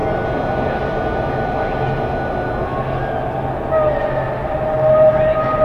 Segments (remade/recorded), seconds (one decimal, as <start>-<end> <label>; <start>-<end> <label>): 0.0-5.6 recorded